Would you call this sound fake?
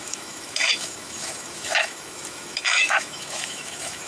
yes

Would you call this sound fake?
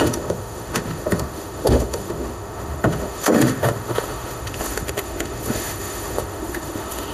yes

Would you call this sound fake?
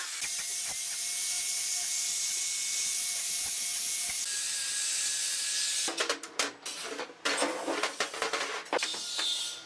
no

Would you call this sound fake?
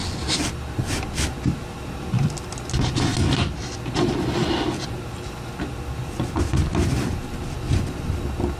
no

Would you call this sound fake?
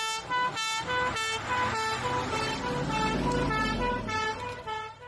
no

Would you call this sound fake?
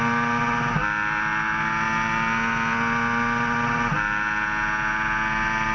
no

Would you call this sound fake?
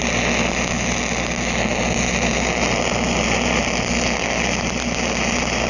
no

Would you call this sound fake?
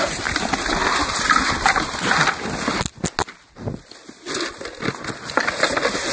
no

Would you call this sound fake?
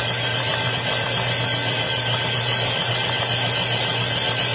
no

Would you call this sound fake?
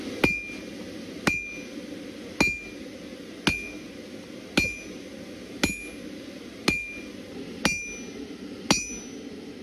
no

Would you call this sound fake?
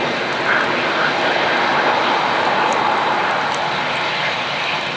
no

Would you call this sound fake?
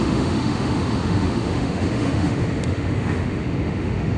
yes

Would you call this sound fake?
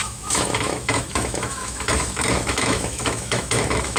yes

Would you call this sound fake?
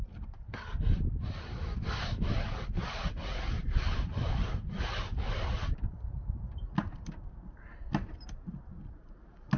no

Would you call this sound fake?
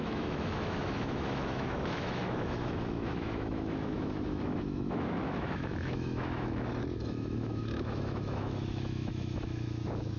yes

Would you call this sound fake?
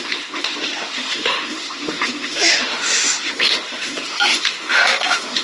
yes